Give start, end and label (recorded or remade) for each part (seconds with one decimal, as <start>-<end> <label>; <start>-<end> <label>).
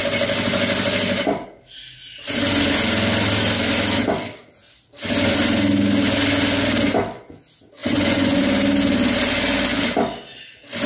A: 0.0-7.8 recorded; 7.8-8.4 remade; 8.4-10.9 recorded